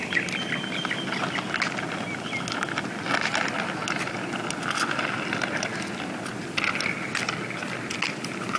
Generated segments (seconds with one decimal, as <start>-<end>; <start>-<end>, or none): none